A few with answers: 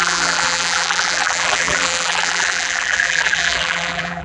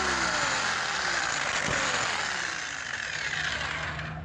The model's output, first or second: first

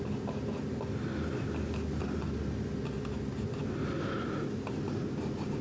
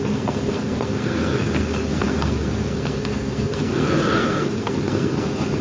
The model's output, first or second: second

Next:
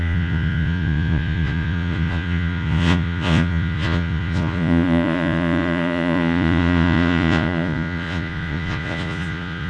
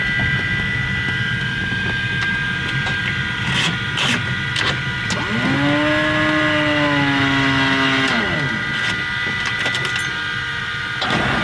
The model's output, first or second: first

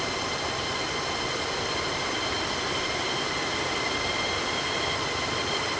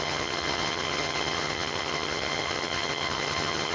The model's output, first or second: second